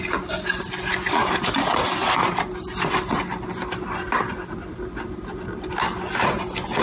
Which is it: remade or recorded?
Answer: recorded